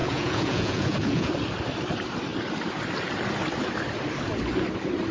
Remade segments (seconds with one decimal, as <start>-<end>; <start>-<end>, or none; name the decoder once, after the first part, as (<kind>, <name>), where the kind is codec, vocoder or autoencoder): 0.0-1.3 (vocoder, Vocos)